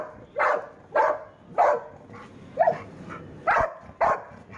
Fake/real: real